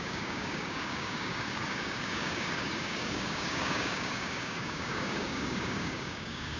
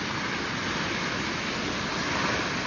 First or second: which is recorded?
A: second